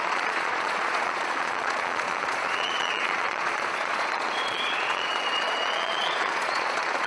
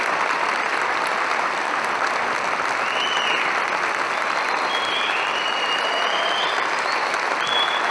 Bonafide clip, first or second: second